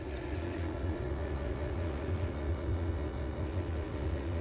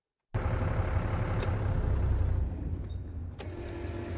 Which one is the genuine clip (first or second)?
second